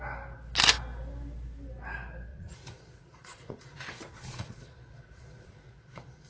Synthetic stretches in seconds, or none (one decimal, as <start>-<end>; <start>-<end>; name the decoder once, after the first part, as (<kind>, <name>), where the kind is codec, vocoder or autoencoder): 2.3-6.3 (vocoder, Vocos)